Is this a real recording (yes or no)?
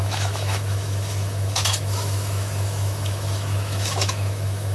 no